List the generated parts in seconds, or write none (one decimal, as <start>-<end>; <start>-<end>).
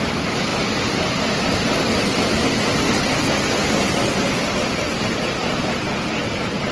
none